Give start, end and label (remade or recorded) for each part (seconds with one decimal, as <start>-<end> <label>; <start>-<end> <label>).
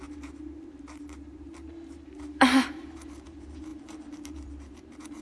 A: 0.0-5.2 remade